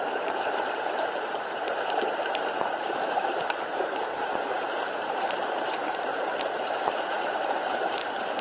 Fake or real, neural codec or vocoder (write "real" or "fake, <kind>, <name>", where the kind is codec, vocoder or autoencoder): fake, vocoder, BigVGAN v2